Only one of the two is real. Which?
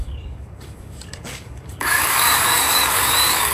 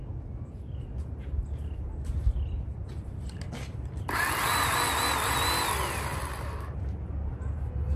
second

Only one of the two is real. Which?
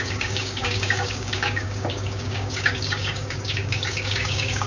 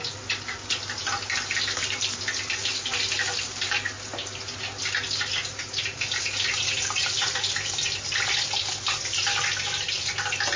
second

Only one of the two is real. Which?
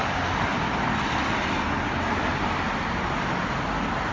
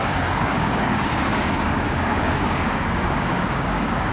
first